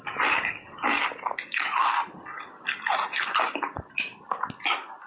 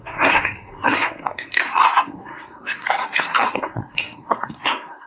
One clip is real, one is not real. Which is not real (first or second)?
second